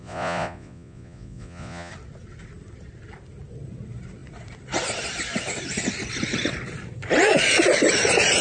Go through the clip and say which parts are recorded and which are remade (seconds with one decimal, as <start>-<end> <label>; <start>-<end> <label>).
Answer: 0.0-1.9 remade; 1.9-8.4 recorded